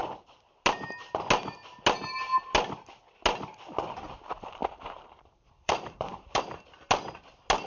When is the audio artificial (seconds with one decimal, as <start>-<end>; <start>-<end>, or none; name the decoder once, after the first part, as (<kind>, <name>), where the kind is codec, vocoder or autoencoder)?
4.6-6.4 (vocoder, BigVGAN v2)